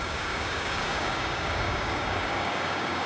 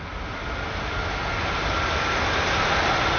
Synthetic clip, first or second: first